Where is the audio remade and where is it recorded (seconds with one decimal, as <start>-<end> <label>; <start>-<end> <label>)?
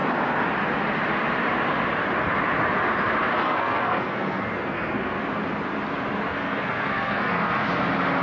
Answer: 0.0-3.4 recorded; 3.4-5.2 remade; 5.2-6.3 recorded; 6.3-7.6 remade; 7.6-8.2 recorded